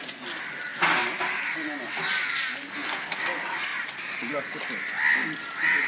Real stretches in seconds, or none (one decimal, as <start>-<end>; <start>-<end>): 0.0-5.9